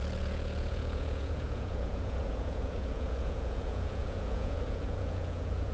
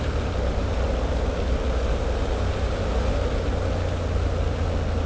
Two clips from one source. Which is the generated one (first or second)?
first